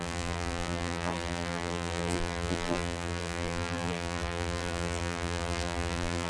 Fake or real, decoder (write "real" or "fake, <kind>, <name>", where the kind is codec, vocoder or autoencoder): fake, vocoder, BigVGAN v2